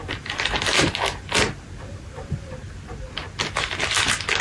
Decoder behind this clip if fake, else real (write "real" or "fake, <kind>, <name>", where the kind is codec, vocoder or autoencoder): real